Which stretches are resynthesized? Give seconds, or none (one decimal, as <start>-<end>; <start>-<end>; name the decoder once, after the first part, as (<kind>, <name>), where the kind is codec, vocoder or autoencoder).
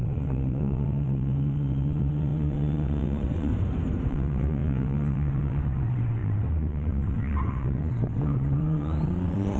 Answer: 0.0-3.5 (vocoder, WaveNeXt); 4.1-9.6